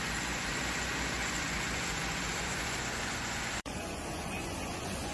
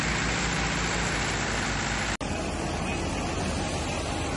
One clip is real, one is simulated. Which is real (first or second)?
second